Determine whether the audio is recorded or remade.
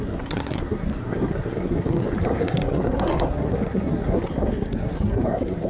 remade